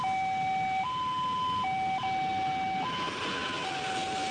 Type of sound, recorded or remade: recorded